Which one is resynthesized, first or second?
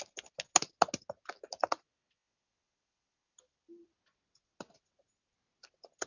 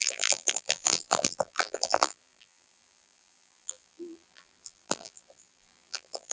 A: second